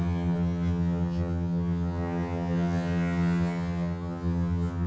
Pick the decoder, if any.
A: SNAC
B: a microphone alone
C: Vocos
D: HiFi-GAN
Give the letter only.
D